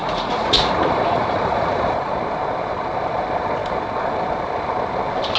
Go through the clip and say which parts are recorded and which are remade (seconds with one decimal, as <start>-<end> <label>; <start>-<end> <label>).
0.0-2.1 remade; 2.1-5.4 recorded